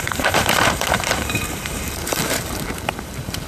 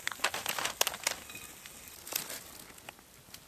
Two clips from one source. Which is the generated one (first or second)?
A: first